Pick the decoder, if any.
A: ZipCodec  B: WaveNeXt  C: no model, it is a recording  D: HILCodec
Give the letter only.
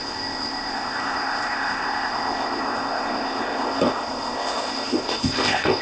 A